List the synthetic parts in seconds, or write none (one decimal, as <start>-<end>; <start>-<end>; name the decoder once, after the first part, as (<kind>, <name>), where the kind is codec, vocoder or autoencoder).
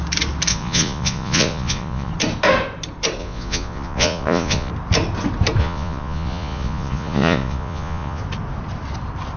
0.5-2.1 (vocoder, Vocos); 3.2-4.7; 5.6-8.2